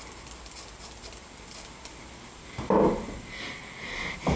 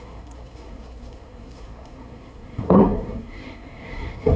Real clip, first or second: first